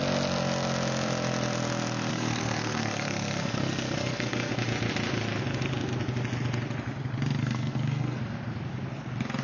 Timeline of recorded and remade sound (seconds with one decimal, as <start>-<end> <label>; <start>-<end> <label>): 0.0-2.1 recorded; 2.1-4.5 remade; 4.5-7.4 recorded; 7.4-8.2 remade; 8.2-9.4 recorded